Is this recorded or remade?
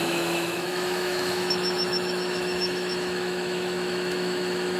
remade